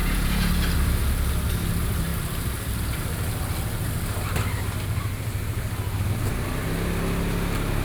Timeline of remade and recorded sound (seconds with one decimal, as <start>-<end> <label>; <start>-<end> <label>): 0.0-0.5 remade; 0.5-7.8 recorded